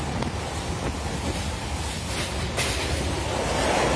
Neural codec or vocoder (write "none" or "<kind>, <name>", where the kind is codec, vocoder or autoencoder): none